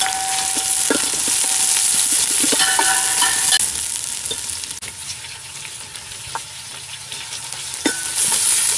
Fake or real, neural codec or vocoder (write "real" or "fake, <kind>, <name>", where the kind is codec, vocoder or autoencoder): real